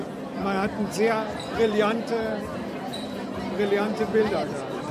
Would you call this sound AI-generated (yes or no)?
no